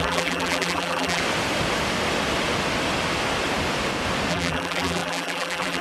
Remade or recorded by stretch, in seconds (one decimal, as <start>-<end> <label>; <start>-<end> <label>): 0.0-1.2 remade; 1.2-4.3 recorded; 4.3-5.8 remade